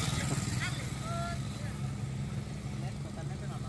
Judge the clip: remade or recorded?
recorded